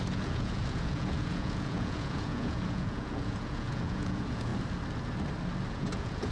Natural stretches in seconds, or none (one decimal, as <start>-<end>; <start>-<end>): 4.5-5.7